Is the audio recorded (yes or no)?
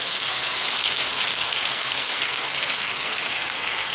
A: no